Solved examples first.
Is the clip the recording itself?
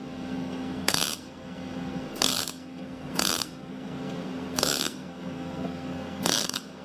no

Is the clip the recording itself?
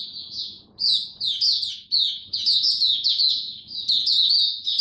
no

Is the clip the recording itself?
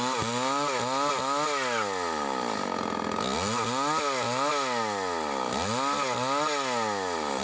yes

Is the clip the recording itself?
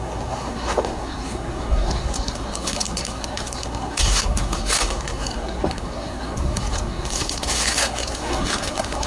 no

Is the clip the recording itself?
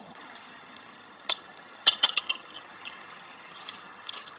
no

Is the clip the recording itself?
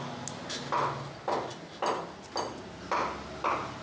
yes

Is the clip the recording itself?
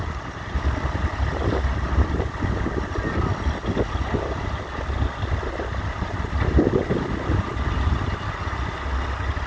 yes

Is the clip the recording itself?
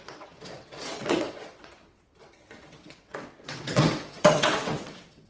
no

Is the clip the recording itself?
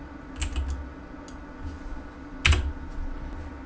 yes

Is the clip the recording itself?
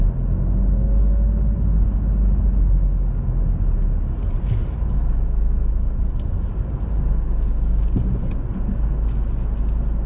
yes